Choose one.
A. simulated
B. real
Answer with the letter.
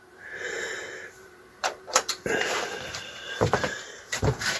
A